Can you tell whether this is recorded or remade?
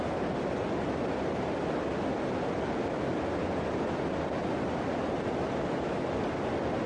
recorded